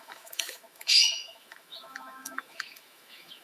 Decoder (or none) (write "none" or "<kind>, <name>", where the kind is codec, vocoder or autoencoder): autoencoder, DAC-VAE